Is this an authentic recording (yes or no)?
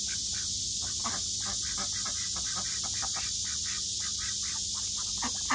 yes